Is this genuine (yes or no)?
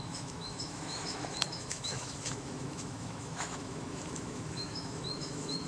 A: no